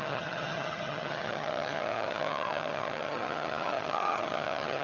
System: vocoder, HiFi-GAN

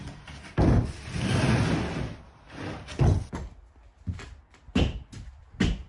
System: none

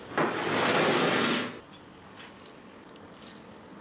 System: none